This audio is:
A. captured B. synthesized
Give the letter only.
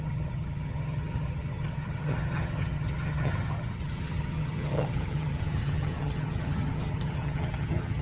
B